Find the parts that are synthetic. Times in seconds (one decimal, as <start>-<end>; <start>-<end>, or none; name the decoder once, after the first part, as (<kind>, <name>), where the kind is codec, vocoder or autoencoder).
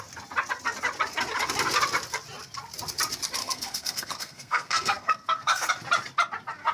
3.4-5.7 (codec, SNAC)